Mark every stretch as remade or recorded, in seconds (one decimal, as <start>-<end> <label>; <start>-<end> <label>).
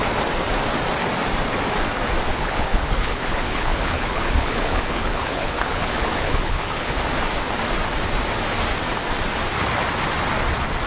0.0-2.3 recorded; 2.3-7.0 remade; 7.0-10.9 recorded